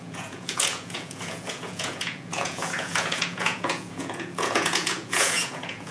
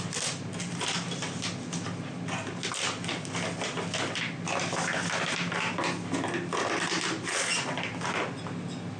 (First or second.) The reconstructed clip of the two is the first